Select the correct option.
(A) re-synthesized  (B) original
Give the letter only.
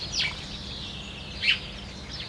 B